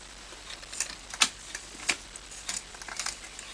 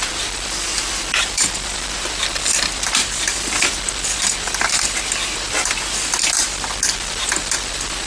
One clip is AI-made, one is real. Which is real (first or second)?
first